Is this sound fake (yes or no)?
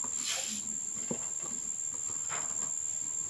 no